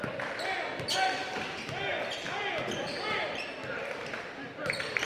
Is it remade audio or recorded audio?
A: recorded